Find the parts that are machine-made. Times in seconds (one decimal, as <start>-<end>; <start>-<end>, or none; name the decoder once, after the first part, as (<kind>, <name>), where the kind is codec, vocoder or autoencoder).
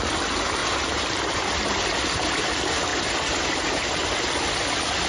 0.6-2.4 (vocoder, BigVGAN v2); 2.9-4.0